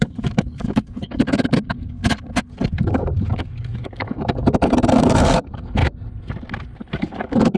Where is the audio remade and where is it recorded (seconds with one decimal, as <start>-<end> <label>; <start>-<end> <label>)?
0.0-2.0 remade; 2.0-2.8 recorded; 2.8-5.8 remade; 5.8-7.0 recorded; 7.0-7.6 remade